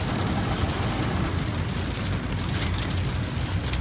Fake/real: real